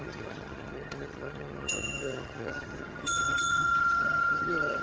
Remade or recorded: remade